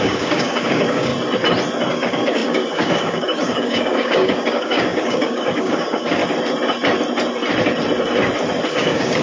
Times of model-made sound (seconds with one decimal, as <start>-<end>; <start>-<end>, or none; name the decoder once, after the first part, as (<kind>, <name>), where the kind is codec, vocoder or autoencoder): 0.0-1.1 (codec, DAC); 1.9-6.2; 8.7-9.2